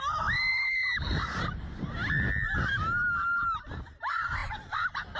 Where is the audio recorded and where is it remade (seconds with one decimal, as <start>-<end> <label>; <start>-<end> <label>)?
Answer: 0.0-5.2 recorded